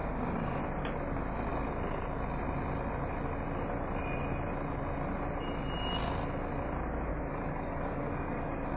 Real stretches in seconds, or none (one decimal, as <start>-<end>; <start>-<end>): 0.6-7.1